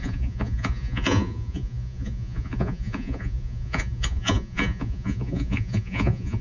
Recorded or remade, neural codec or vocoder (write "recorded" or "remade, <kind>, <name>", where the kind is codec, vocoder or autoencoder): remade, vocoder, Vocos